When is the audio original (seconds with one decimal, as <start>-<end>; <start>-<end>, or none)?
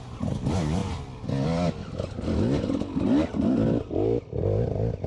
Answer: 0.0-5.1